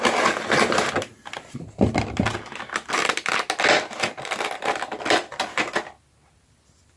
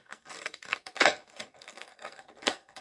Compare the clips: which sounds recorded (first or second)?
first